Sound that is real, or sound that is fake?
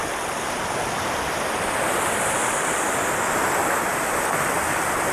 real